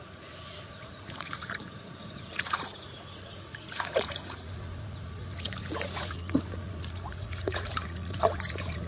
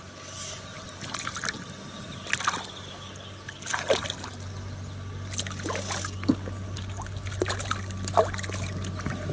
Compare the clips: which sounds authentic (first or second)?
second